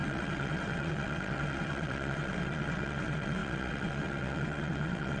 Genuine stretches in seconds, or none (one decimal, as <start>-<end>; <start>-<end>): none